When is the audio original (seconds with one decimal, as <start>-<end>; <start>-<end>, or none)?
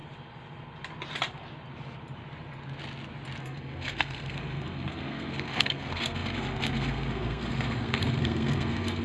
0.0-3.4